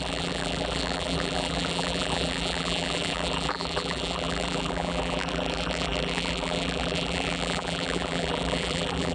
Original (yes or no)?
no